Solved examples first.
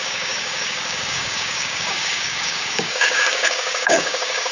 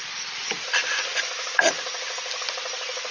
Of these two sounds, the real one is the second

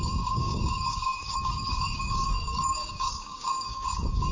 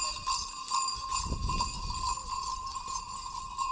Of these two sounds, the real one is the second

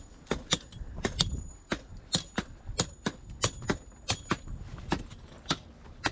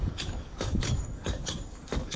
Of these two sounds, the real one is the first